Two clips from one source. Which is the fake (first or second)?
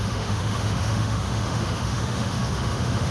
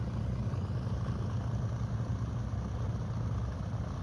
first